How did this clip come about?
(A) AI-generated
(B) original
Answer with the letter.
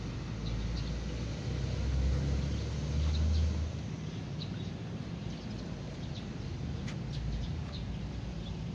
B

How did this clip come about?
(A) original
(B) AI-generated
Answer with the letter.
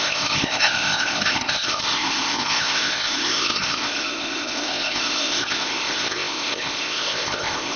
B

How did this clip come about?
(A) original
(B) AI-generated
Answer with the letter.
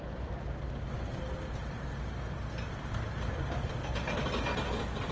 A